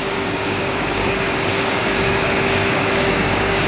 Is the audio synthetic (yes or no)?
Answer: yes